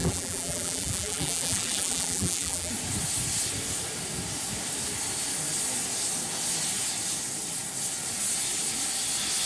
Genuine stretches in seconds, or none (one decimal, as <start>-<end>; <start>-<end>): 2.7-9.5